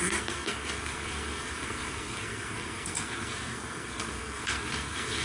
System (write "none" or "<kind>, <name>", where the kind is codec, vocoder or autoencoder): codec, SNAC